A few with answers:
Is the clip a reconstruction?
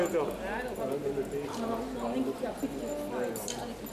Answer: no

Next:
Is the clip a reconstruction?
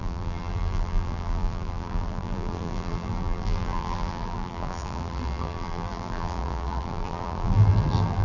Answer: yes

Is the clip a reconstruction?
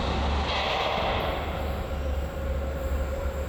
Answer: no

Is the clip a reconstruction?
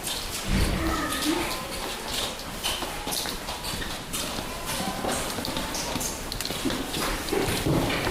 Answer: yes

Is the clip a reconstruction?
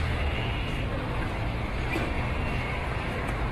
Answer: yes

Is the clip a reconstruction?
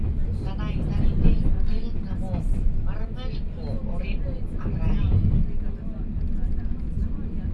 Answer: no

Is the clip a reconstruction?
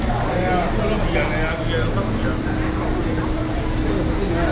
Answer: no